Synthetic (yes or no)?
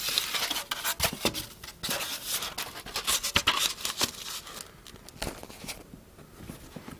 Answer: no